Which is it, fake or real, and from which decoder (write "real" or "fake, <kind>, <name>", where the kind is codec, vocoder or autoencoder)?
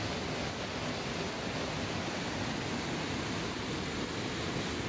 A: real